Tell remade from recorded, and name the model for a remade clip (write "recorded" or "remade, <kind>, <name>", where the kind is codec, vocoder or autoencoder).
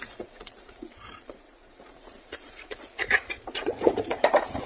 remade, vocoder, Vocos